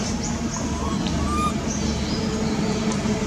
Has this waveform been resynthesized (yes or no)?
no